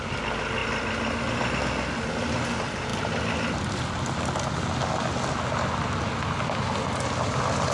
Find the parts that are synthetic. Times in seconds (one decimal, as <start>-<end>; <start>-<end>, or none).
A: none